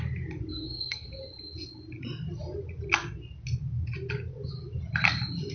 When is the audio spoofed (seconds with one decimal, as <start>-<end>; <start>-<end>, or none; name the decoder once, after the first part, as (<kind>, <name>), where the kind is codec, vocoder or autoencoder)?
0.5-1.1 (codec, SNAC)

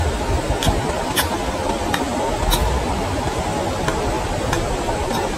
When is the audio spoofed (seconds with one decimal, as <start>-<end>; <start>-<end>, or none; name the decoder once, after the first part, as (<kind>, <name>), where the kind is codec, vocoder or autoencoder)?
2.6-3.4 (vocoder, BigVGAN v2)

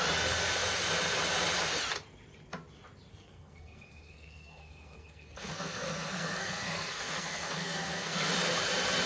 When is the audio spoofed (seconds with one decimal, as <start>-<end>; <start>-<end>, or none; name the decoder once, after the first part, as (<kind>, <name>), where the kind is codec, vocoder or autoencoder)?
3.1-8.3 (codec, SNAC)

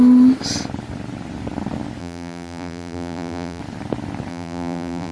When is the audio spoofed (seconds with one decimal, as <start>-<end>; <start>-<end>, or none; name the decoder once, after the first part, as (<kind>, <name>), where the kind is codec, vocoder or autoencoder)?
2.0-3.6 (vocoder, BigVGAN v2); 4.3-5.1

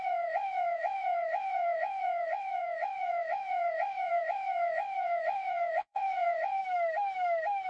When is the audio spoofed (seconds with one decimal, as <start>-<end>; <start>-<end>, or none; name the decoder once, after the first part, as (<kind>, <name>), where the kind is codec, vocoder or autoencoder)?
0.0-6.6 (vocoder, WaveNeXt)

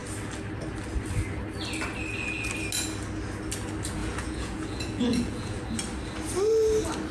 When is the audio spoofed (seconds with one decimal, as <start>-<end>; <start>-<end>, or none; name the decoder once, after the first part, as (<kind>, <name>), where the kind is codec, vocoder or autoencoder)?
4.0-5.6 (vocoder, Vocos)